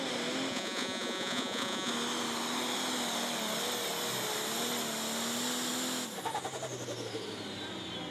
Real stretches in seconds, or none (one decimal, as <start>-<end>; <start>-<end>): 0.0-0.5; 1.9-8.1